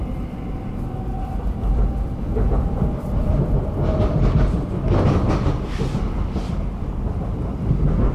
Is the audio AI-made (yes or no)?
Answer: no